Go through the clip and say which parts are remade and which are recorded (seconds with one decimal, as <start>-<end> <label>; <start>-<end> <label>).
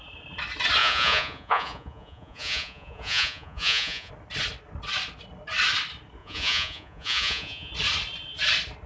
0.0-0.8 recorded; 0.8-4.1 remade; 4.1-6.2 recorded; 6.2-7.7 remade; 7.7-8.9 recorded